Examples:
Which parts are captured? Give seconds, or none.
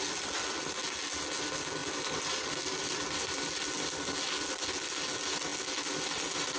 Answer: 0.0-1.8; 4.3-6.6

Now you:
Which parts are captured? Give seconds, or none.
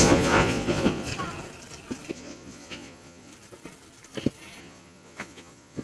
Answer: 1.1-2.1; 3.3-4.6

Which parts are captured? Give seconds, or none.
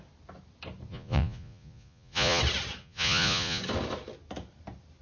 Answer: 0.0-0.9; 2.4-2.8; 3.6-5.0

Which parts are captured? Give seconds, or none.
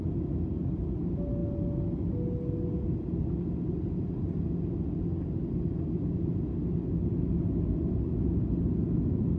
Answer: 0.0-9.4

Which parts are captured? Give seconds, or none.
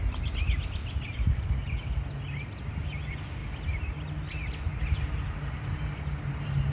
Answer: 0.0-0.8; 2.7-6.7